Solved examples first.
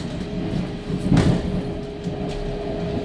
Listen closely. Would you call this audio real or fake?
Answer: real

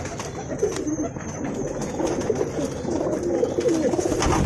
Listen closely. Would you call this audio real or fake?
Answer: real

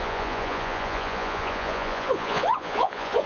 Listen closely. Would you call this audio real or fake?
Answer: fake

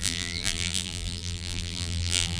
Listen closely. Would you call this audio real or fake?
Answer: fake